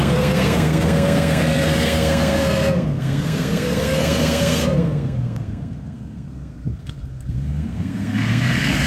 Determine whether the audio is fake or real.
fake